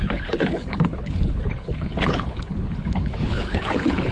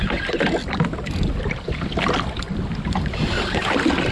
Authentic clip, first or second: second